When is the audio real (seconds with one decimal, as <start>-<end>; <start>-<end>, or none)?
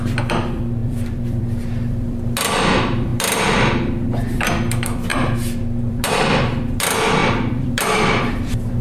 5.1-5.9